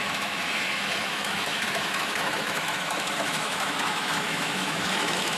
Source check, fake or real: fake